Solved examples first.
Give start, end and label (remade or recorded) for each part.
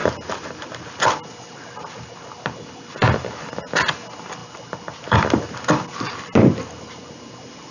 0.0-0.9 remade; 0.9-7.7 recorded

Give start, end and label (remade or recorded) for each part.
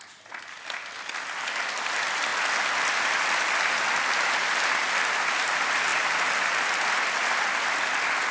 0.0-8.3 recorded